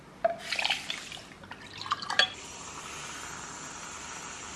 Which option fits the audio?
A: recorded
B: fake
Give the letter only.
A